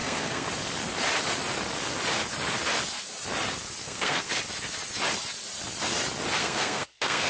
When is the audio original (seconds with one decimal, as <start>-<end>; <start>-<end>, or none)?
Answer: 0.5-3.8; 4.4-6.4